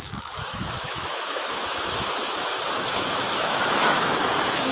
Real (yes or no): no